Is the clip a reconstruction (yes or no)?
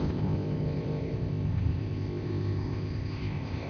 yes